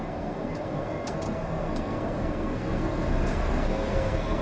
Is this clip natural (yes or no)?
no